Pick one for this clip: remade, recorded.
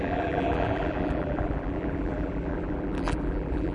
remade